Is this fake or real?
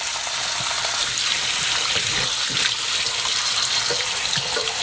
fake